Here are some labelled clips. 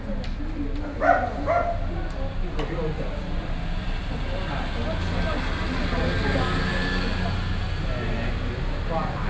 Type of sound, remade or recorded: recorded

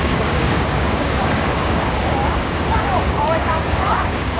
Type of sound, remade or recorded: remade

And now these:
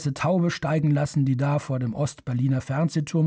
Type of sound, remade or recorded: recorded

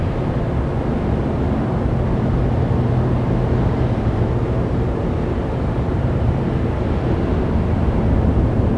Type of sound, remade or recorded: recorded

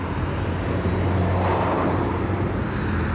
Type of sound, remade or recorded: recorded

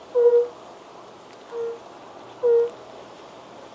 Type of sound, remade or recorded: recorded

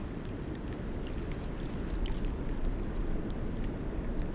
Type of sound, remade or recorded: recorded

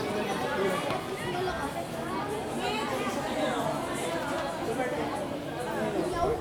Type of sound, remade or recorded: recorded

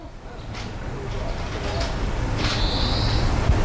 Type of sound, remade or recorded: recorded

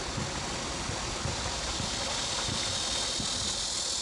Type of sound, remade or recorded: recorded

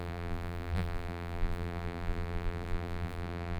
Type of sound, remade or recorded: remade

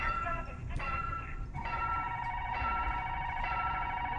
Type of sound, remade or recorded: remade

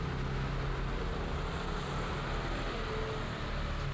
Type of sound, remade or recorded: recorded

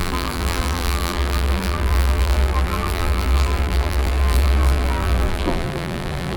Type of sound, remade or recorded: remade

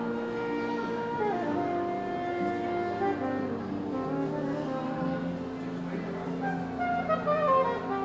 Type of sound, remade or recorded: recorded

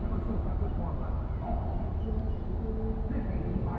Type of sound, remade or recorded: recorded